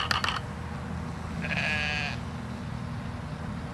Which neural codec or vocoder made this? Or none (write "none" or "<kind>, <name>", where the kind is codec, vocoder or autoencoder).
none